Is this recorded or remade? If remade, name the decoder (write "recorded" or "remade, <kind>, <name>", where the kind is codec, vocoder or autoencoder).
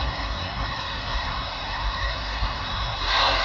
remade, codec, SNAC